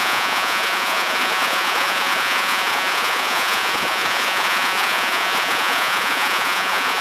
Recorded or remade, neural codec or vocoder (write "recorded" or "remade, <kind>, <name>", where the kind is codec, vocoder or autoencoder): remade, vocoder, Vocos